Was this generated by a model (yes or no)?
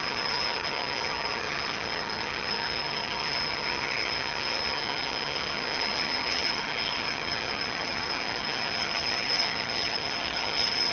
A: yes